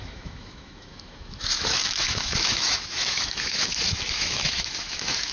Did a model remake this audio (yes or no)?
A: yes